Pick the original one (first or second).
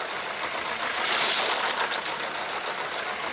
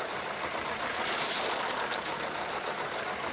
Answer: first